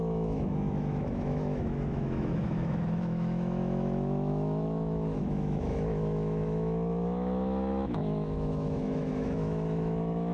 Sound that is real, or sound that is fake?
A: fake